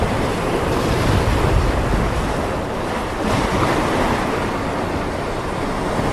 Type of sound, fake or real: real